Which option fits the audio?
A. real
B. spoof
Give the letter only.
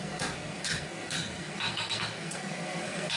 B